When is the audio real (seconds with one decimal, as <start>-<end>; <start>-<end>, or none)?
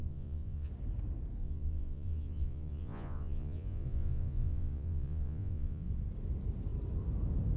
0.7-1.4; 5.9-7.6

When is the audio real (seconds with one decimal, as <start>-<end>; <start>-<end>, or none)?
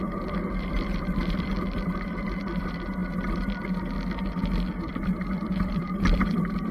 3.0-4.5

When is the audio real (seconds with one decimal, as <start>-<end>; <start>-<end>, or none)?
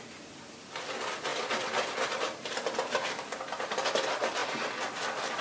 0.0-5.4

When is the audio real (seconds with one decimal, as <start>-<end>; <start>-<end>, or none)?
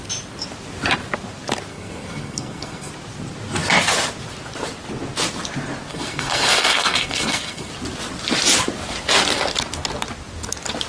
0.0-1.7; 2.9-5.9; 7.7-10.9